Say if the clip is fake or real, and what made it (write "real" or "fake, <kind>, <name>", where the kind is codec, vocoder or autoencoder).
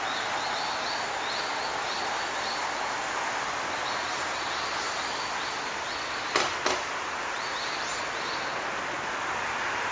real